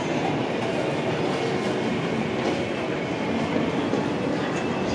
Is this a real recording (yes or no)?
yes